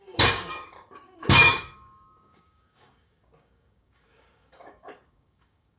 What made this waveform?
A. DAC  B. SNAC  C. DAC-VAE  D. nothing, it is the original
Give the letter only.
A